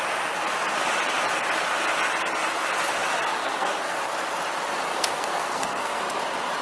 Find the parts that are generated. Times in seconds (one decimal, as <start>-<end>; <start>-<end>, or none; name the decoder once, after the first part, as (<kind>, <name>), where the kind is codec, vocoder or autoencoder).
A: 3.4-4.0 (codec, SNAC); 4.9-6.0